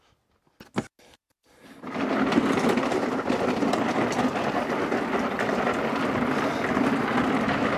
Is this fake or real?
real